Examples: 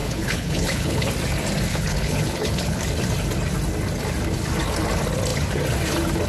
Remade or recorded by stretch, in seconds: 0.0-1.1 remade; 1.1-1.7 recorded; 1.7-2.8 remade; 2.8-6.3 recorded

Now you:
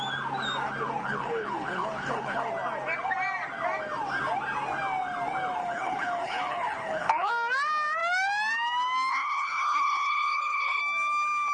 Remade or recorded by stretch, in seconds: 0.0-1.0 recorded; 1.0-2.5 remade; 2.5-5.6 recorded; 5.6-7.3 remade; 7.3-9.1 recorded; 9.1-10.8 remade; 10.8-11.5 recorded

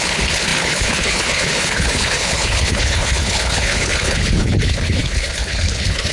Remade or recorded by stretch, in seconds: 0.0-6.1 remade